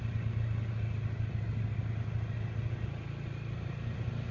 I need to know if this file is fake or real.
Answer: real